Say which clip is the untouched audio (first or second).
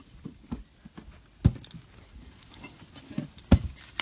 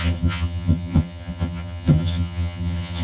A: first